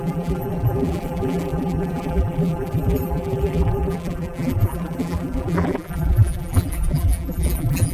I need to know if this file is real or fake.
fake